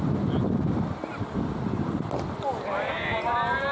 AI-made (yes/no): no